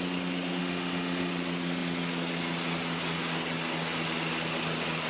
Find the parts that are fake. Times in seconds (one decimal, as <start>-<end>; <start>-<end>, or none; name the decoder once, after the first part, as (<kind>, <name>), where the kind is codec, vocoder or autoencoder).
0.6-1.3 (autoencoder, DAC-VAE)